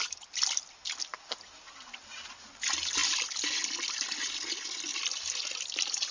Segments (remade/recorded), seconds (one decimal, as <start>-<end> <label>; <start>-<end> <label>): 0.0-1.1 recorded; 1.1-2.0 remade; 2.0-3.0 recorded; 3.0-4.2 remade; 4.2-4.9 recorded; 4.9-6.1 remade